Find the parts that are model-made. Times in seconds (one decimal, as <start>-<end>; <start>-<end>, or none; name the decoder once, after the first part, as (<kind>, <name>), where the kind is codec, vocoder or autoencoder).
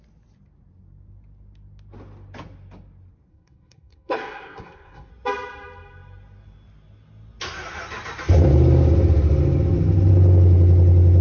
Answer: 3.3-5.1 (codec, SNAC)